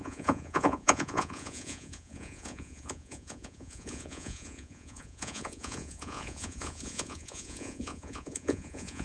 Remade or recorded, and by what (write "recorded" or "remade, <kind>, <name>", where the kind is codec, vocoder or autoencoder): remade, vocoder, Vocos